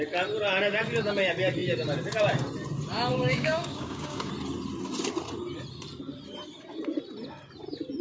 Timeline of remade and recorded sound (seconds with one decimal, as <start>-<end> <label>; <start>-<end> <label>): 0.0-3.1 recorded; 3.1-4.3 remade; 4.3-8.0 recorded